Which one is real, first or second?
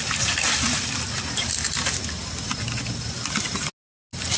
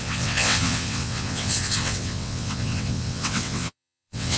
first